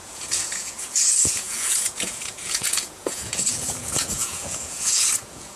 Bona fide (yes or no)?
no